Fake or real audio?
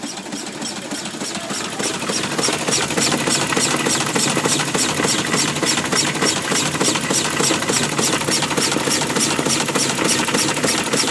real